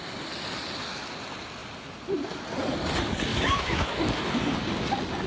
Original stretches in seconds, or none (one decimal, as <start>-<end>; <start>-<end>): 0.0-3.3; 4.0-5.3